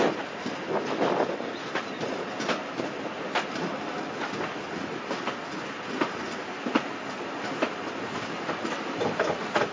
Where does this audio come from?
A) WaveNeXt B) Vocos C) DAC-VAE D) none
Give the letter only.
D